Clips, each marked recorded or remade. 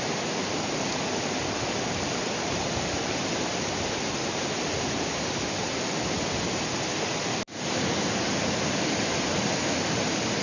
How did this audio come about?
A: recorded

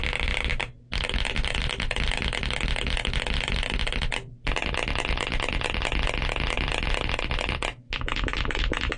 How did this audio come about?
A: recorded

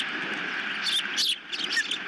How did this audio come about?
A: recorded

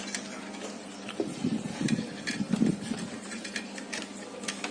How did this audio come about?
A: recorded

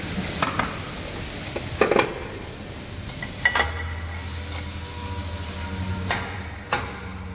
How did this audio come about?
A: recorded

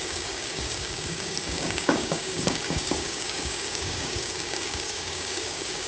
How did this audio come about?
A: remade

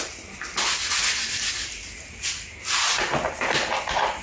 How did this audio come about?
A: recorded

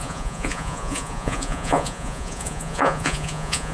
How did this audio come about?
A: remade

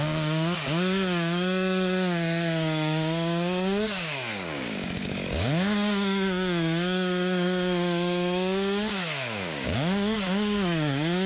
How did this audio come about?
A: remade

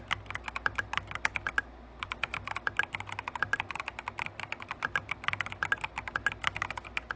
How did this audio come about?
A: recorded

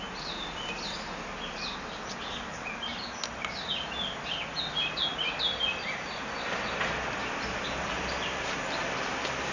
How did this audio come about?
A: recorded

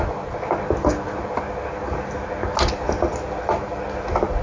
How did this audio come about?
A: recorded